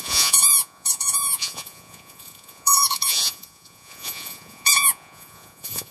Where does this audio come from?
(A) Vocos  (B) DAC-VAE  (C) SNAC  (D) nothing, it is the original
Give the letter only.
A